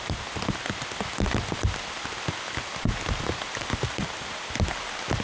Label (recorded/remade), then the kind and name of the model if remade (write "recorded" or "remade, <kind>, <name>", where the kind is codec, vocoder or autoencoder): recorded